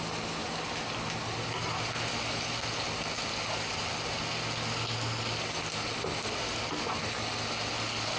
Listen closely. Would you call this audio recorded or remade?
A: recorded